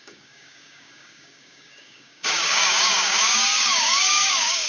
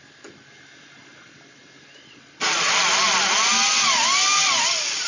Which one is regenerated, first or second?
first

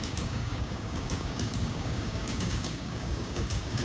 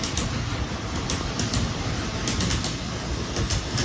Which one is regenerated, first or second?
first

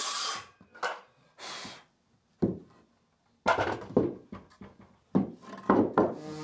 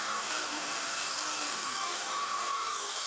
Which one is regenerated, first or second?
second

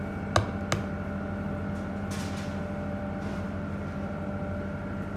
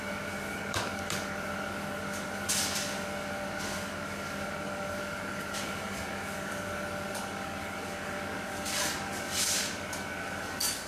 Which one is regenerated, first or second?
second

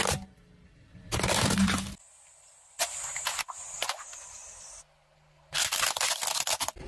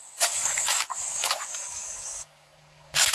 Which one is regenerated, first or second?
second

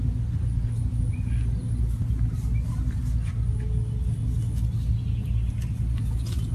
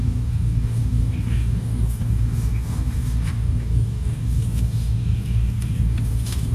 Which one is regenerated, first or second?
second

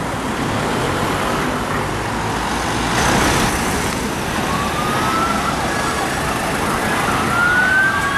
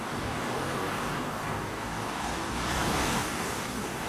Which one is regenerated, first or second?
second